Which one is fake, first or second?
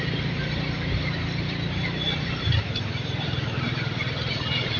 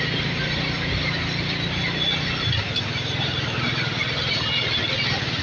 first